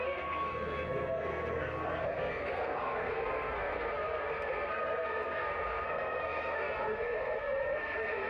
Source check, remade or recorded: remade